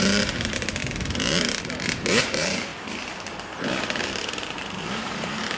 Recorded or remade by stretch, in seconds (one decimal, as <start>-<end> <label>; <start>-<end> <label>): 0.0-0.8 remade; 0.8-1.6 recorded; 1.6-2.7 remade; 2.7-4.0 recorded; 4.0-5.6 remade